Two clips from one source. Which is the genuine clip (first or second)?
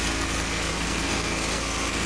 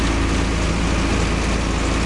second